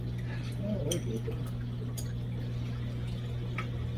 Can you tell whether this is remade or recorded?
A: recorded